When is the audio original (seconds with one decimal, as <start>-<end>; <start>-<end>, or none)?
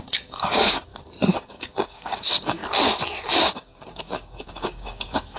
0.9-1.5; 2.6-3.5